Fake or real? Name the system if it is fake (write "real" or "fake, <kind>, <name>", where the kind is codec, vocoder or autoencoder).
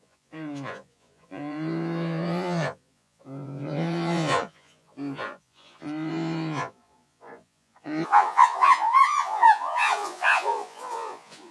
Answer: fake, vocoder, Vocos